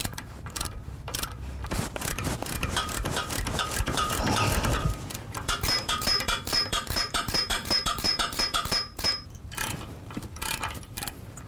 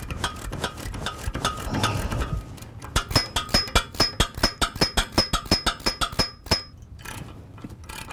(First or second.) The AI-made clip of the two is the first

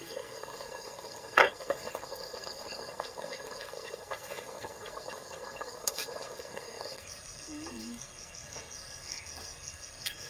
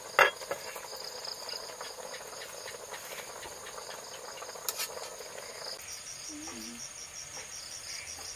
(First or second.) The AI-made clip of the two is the first